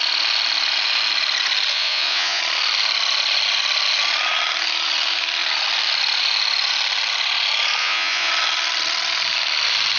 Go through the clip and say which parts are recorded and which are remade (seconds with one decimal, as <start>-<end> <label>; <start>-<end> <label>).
0.0-1.7 recorded; 1.7-2.4 remade; 2.4-7.8 recorded; 7.8-8.3 remade; 8.3-10.0 recorded